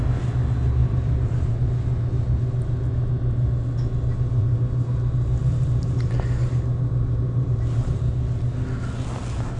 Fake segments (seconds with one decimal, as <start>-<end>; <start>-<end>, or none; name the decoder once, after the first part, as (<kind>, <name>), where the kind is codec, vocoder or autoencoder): 0.8-1.5 (vocoder, BigVGAN v2); 5.4-8.0